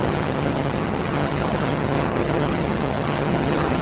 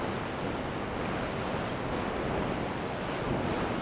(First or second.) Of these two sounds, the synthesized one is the first